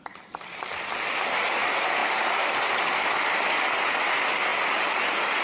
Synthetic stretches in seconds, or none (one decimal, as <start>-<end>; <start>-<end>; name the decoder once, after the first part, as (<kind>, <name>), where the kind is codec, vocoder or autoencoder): none